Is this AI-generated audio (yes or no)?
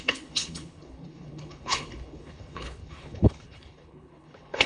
yes